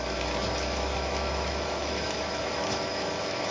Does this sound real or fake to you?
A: fake